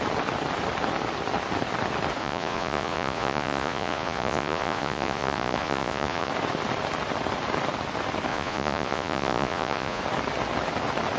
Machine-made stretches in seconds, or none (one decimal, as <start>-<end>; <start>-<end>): 2.2-6.3; 8.3-10.0